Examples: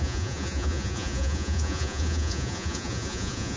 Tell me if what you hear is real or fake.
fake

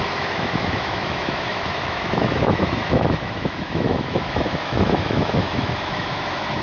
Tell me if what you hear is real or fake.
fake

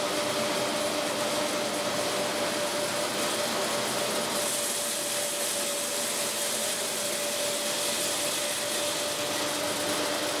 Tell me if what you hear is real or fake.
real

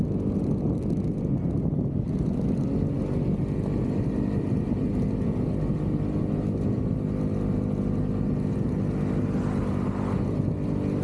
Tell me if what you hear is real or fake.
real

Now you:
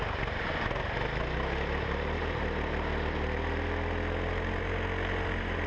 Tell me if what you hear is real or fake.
real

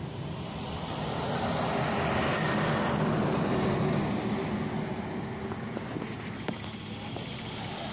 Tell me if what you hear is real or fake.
real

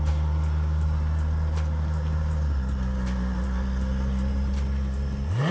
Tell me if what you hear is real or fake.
real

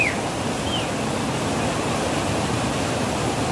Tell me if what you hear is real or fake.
real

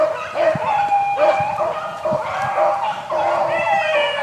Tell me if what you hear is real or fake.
real